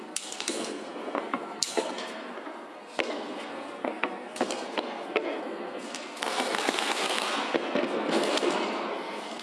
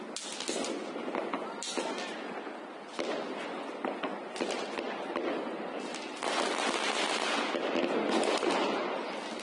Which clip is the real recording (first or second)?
second